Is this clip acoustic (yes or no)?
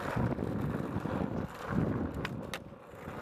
yes